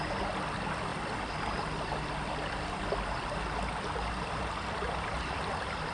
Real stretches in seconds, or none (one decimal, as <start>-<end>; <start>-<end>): 0.0-5.9